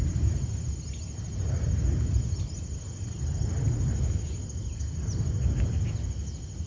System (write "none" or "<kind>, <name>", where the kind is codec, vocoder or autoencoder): none